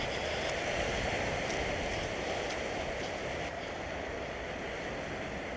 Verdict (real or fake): real